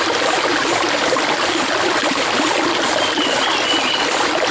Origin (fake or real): real